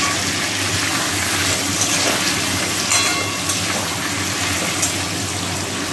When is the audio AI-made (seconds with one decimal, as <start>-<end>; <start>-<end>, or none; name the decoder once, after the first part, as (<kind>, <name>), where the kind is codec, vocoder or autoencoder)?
none